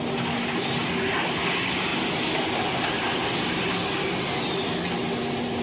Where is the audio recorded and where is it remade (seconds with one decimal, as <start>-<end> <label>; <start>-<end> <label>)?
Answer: 0.0-5.6 recorded